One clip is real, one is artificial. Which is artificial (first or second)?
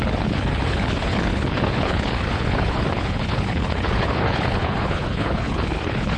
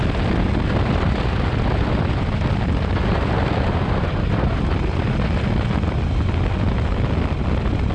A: first